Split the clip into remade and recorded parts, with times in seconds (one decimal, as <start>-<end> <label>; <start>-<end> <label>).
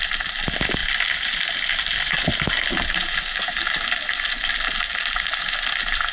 0.0-6.1 recorded